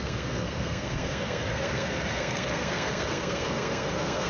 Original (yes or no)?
no